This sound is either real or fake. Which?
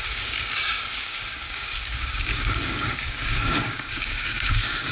fake